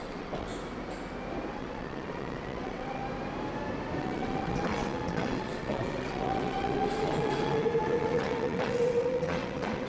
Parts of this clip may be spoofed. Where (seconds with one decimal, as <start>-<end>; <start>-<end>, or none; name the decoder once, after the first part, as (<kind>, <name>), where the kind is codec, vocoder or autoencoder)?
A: 0.0-0.5 (vocoder, WaveNeXt); 1.5-3.0; 4.0-9.9